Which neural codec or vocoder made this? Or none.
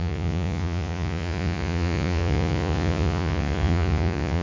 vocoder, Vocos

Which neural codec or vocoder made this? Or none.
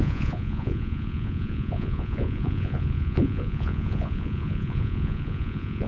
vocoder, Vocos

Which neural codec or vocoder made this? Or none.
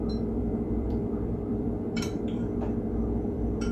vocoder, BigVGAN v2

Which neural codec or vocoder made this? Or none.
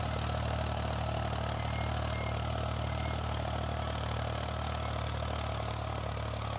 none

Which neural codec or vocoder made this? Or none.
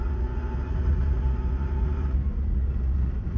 vocoder, Vocos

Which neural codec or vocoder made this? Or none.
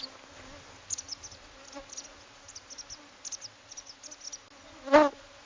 none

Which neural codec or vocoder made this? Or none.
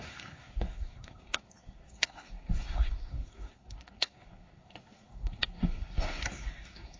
codec, SNAC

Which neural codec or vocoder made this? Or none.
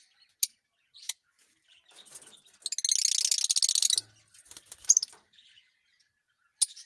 none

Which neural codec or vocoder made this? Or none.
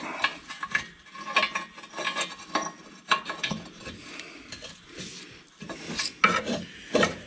none